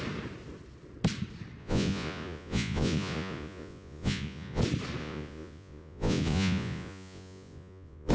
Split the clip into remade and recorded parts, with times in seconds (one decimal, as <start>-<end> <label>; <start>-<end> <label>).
0.0-1.6 recorded; 1.6-4.6 remade; 4.6-5.0 recorded; 5.0-8.1 remade